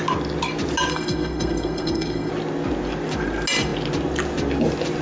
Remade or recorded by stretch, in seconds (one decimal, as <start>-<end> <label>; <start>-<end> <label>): 0.0-0.9 recorded; 0.9-2.3 remade; 2.3-5.0 recorded